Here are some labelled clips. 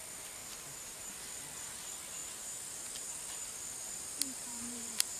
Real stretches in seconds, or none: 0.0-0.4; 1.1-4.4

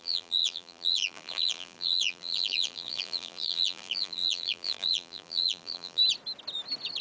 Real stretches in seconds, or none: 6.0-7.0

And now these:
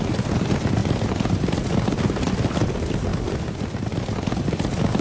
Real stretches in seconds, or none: 0.0-0.8; 1.5-5.0